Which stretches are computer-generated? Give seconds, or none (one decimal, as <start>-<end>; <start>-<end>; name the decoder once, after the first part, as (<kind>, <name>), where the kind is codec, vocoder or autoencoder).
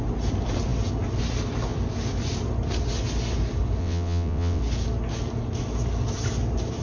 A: 3.8-4.6 (vocoder, WaveNeXt)